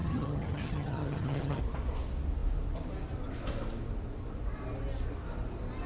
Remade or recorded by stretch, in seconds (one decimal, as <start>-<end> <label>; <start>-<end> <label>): 0.0-1.6 remade; 1.6-5.9 recorded